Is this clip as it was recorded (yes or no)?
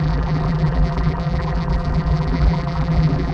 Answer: no